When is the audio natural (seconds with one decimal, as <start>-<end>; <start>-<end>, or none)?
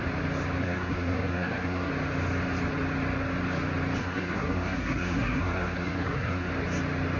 0.0-0.6; 1.9-4.0; 6.5-7.2